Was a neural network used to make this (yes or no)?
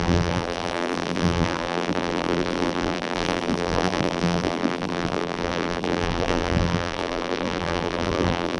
yes